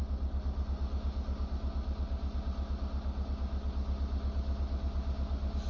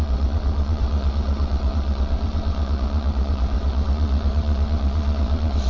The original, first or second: first